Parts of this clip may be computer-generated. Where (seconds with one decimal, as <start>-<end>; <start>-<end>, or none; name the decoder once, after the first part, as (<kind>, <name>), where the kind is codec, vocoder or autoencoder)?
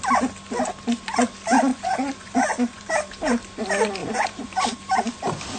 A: 1.7-2.9 (vocoder, Vocos); 4.0-4.6